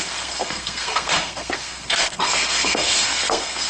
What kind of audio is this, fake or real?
fake